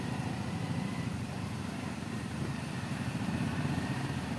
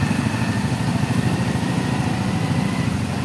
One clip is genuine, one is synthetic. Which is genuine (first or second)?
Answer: second